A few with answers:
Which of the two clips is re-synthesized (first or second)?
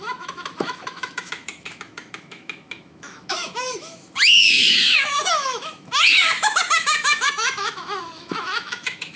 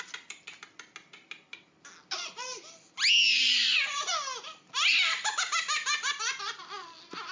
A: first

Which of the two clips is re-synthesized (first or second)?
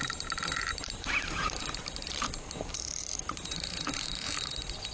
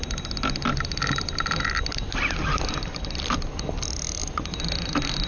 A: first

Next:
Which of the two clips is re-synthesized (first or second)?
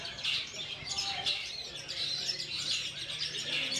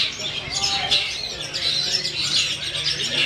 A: first